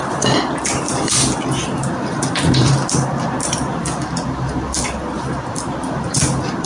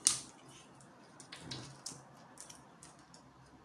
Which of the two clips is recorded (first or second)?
second